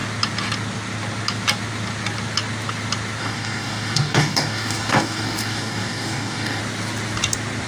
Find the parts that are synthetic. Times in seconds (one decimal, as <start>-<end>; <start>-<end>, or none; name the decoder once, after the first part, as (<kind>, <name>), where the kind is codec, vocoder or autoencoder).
3.2-6.6 (codec, DAC)